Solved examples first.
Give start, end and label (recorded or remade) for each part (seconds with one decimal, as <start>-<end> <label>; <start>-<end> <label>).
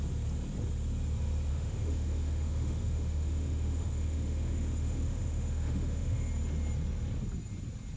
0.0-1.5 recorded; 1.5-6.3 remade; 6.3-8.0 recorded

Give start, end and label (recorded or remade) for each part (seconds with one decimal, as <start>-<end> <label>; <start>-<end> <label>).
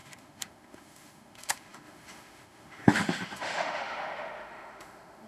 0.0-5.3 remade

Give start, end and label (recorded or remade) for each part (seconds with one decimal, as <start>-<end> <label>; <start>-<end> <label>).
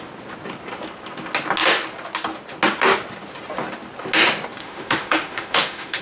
0.0-4.6 recorded; 4.6-6.0 remade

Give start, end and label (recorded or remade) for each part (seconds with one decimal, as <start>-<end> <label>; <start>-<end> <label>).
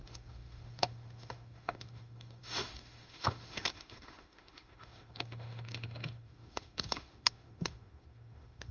0.0-8.7 remade